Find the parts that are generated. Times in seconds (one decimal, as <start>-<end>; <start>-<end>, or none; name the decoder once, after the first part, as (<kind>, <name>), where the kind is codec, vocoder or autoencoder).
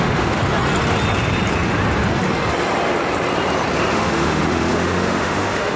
0.0-0.4 (autoencoder, DAC-VAE); 3.9-5.8